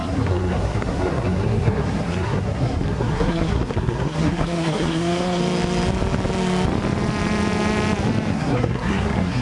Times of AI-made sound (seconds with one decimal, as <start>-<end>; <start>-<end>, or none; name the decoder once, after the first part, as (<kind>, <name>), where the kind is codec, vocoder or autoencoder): 0.0-5.4 (codec, SNAC); 8.3-9.4